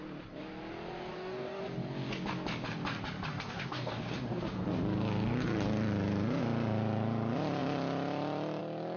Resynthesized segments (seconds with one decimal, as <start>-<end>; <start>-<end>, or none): 1.1-1.6; 3.3-4.4